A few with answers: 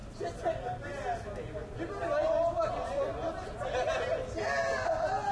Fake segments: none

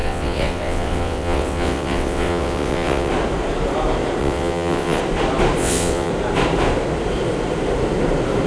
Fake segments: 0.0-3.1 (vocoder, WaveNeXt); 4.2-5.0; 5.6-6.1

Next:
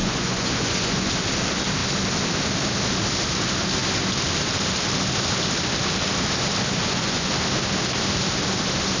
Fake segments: 0.0-1.1 (vocoder, Vocos); 6.8-7.3